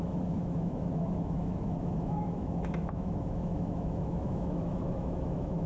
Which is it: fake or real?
fake